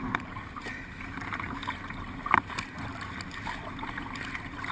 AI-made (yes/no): no